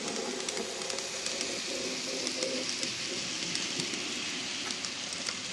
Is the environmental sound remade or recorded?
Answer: recorded